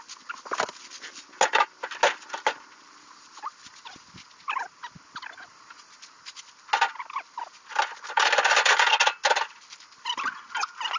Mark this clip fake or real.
real